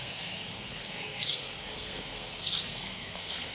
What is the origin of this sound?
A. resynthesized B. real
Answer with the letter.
A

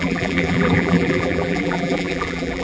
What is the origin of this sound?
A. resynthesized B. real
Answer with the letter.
A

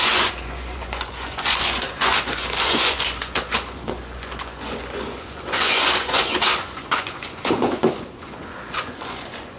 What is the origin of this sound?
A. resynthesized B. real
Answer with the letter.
A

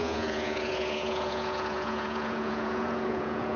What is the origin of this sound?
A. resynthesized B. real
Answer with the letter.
A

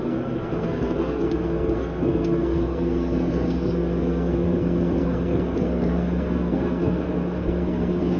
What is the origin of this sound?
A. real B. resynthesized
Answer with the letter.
B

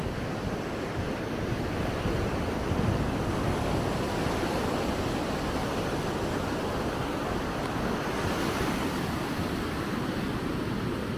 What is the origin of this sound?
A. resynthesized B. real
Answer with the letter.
B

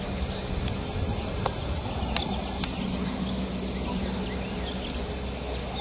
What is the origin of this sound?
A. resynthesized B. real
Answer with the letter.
B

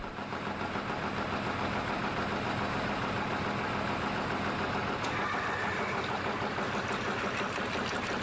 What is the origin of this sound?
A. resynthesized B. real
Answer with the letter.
B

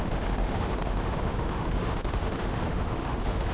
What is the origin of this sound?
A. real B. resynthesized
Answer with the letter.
B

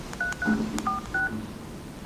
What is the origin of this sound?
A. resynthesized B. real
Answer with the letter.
B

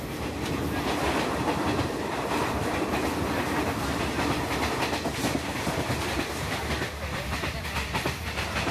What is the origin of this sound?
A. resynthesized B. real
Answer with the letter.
A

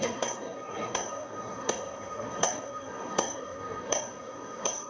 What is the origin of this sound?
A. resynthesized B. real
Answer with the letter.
A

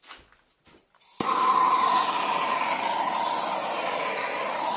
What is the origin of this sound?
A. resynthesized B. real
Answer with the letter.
B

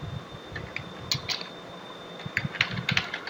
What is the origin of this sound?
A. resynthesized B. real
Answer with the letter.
B